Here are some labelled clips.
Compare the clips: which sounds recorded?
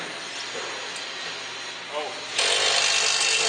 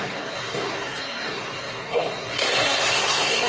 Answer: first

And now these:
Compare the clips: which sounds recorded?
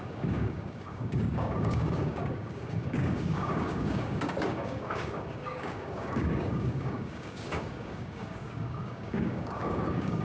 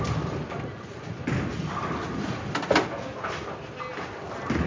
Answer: second